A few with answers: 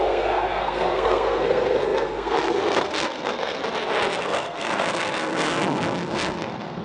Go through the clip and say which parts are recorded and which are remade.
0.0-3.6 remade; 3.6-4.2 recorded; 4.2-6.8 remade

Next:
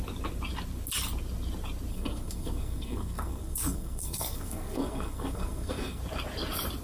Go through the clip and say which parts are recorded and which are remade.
0.0-1.9 recorded; 1.9-6.0 remade; 6.0-6.8 recorded

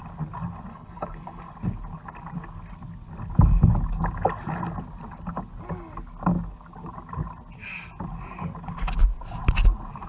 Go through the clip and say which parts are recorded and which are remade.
0.0-0.7 recorded; 0.7-1.5 remade; 1.5-10.1 recorded

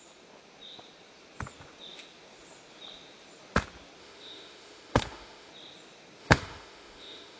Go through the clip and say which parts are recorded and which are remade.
0.0-4.0 recorded; 4.0-5.5 remade; 5.5-6.2 recorded; 6.2-7.4 remade